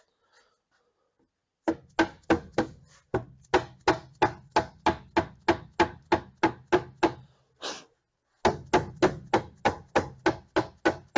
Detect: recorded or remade recorded